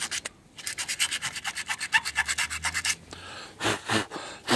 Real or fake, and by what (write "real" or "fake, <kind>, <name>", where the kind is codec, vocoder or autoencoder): real